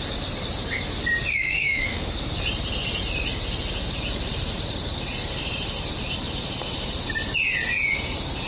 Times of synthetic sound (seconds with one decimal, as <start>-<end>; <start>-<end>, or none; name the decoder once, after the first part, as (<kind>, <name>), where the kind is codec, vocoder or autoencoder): 1.3-2.1 (autoencoder, DAC-VAE)